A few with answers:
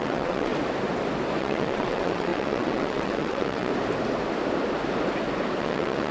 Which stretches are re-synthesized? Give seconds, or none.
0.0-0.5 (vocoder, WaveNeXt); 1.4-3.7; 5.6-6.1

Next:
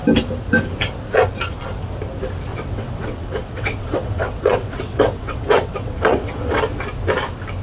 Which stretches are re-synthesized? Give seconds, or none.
2.5-6.6 (vocoder, WaveNeXt)